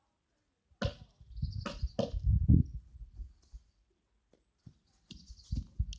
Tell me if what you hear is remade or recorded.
recorded